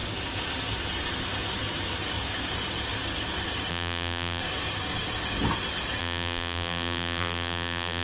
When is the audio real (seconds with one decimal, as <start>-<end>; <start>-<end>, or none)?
0.0-3.7; 4.4-6.0